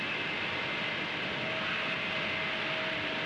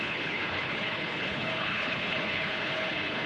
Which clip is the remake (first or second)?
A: second